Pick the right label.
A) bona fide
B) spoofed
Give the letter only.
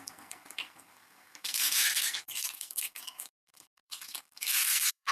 B